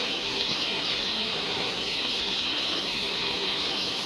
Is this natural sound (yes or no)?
no